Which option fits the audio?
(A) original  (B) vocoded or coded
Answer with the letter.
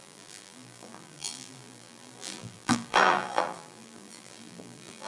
B